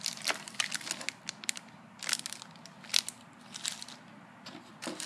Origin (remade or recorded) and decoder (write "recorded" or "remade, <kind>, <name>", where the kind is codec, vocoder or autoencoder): recorded